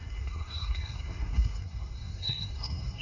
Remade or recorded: remade